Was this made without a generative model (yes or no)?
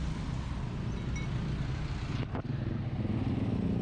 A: yes